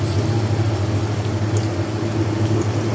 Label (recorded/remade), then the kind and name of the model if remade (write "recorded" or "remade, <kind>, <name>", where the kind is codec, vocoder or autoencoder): recorded